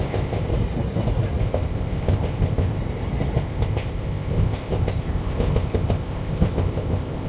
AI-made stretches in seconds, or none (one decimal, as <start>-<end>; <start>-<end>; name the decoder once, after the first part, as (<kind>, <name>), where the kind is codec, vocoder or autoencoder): 0.0-0.5 (codec, ZipCodec); 1.4-2.8; 3.4-7.3